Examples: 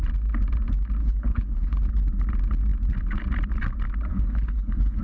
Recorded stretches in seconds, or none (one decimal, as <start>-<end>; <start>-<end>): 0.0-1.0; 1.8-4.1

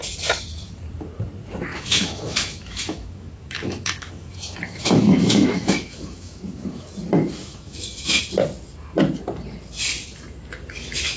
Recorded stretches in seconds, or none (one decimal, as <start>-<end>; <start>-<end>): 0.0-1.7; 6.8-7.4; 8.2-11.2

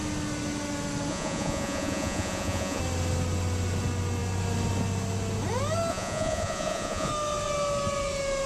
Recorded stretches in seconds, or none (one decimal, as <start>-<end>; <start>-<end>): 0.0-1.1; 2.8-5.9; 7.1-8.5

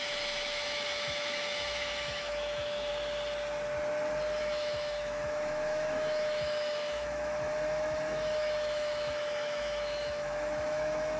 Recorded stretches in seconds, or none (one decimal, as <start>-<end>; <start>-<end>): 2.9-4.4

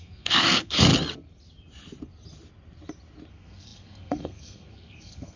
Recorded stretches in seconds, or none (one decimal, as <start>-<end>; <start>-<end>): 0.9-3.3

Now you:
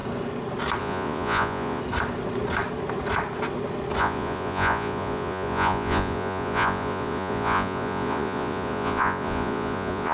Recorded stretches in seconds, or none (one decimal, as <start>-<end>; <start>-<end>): 0.0-0.8; 1.8-4.0

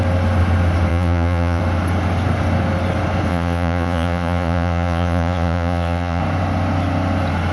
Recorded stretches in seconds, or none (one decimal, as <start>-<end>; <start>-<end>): 0.0-0.9; 1.6-3.3; 6.2-7.5